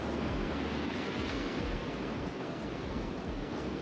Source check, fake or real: fake